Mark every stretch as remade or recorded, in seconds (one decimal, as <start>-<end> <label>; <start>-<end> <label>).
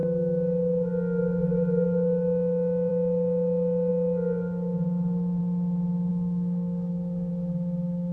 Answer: 0.0-6.1 recorded; 6.1-7.3 remade; 7.3-8.1 recorded